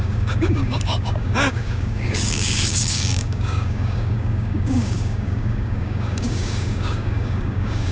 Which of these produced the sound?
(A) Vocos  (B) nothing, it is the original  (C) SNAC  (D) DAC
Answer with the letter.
D